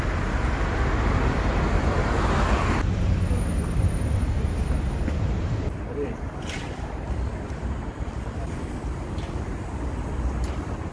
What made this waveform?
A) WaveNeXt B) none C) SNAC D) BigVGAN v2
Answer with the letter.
D